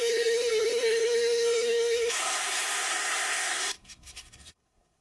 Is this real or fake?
fake